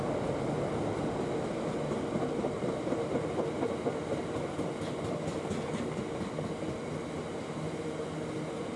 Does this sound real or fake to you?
real